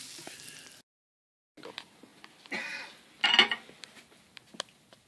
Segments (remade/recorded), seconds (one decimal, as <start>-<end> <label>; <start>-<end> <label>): 0.0-5.1 recorded